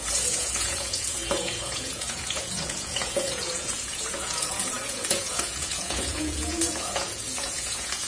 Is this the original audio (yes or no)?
no